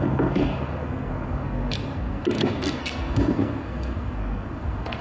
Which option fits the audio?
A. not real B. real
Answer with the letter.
A